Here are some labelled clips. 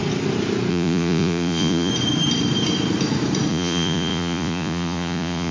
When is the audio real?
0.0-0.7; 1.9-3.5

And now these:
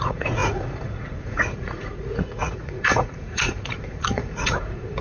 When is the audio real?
none

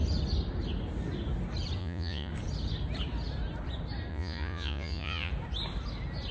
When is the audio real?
0.0-1.8; 2.3-4.1; 5.3-6.3

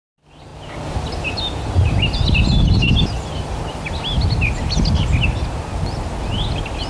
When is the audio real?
0.0-6.9

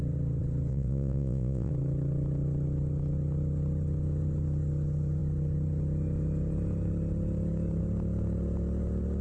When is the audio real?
0.0-0.7; 1.7-9.2

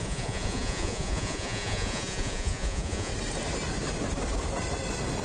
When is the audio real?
3.1-5.2

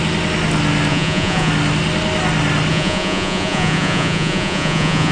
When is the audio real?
0.0-0.9; 1.5-2.7